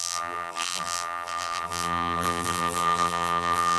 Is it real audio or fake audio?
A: fake